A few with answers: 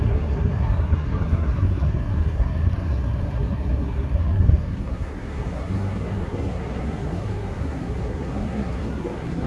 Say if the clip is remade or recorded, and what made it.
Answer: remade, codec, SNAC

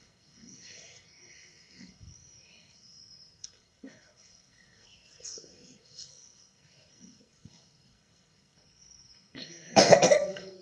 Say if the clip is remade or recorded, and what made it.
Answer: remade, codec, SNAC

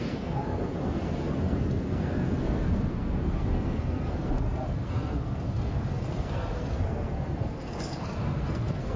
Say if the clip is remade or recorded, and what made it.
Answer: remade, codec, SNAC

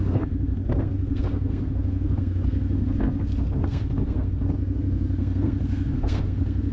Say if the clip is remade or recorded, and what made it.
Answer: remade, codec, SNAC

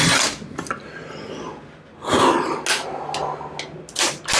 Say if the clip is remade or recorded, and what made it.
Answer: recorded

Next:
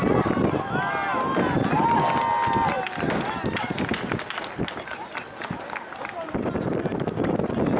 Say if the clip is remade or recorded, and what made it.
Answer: recorded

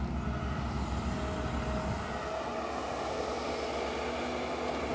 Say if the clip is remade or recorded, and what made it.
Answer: recorded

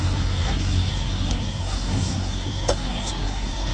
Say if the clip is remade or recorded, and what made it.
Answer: remade, codec, SNAC